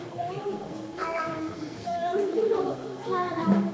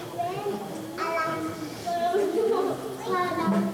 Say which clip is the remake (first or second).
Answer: first